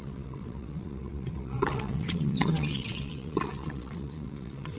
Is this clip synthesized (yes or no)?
yes